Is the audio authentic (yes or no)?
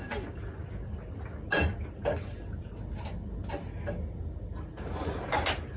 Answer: yes